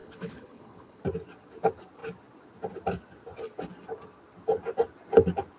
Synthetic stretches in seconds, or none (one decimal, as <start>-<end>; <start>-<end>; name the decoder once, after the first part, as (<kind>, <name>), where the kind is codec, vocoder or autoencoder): 0.0-1.0 (codec, HILCodec)